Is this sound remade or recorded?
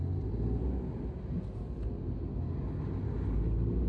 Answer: recorded